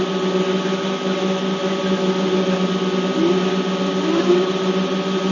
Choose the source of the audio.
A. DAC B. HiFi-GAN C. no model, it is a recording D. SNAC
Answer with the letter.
C